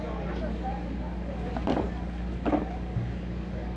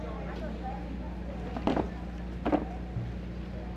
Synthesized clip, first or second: first